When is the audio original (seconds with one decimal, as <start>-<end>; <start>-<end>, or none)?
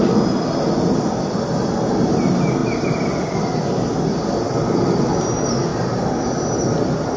0.0-7.2